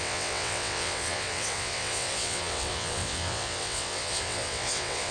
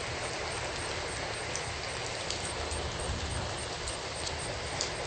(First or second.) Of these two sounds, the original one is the second